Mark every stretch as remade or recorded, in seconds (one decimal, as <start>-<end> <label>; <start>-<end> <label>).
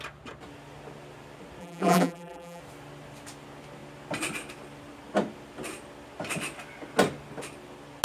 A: 0.0-1.6 recorded; 1.6-2.6 remade; 2.6-8.0 recorded